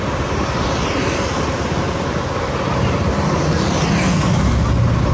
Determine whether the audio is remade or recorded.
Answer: recorded